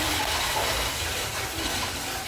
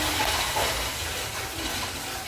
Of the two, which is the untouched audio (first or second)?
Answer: second